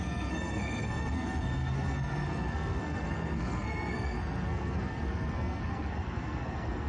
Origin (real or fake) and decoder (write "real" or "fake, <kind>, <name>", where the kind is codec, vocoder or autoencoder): fake, codec, SNAC